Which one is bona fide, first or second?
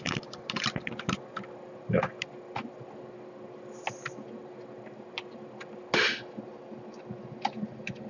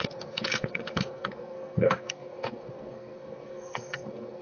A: first